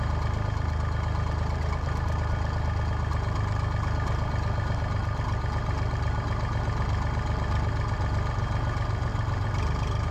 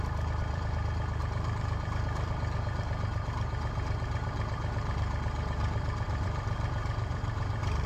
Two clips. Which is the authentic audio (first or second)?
first